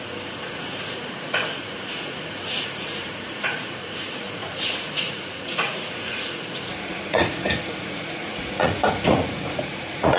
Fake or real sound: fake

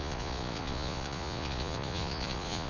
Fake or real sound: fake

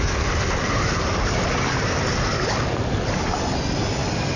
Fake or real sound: real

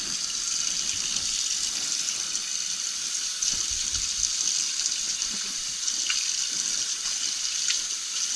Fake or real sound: real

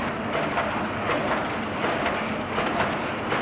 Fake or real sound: real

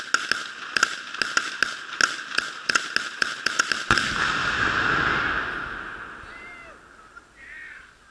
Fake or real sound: real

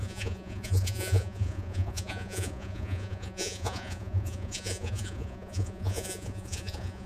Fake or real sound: fake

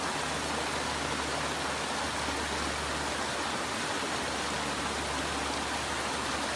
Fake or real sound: real